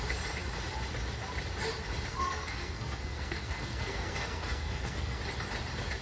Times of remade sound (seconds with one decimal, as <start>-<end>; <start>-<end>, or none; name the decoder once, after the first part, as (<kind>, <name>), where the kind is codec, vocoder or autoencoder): 2.1-5.2 (codec, SNAC)